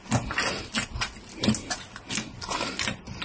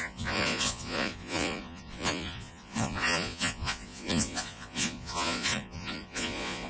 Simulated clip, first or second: second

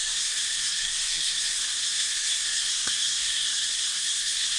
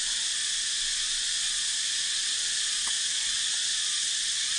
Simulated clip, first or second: first